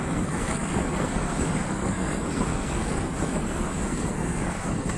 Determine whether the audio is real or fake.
fake